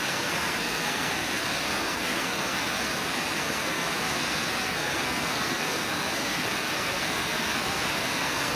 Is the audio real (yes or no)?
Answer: no